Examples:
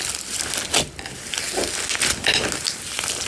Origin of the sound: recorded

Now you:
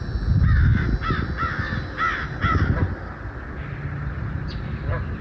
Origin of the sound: recorded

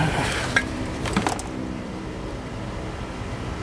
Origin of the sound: remade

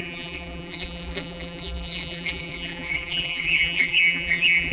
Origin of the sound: remade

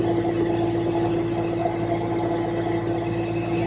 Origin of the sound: recorded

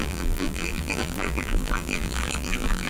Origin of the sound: remade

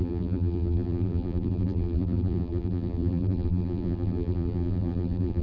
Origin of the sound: remade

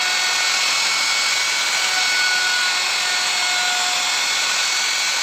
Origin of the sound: recorded